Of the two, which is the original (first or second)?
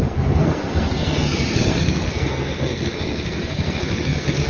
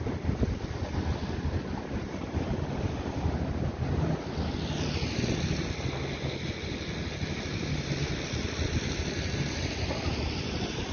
second